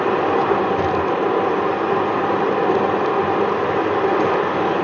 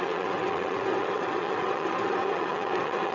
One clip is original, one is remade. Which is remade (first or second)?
second